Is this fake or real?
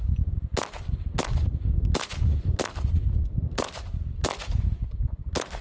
real